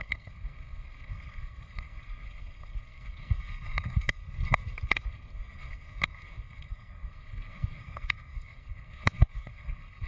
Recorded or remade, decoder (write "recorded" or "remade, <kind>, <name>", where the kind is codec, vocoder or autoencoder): remade, codec, SNAC